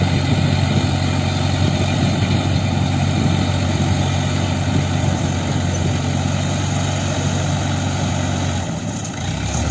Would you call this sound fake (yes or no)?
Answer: no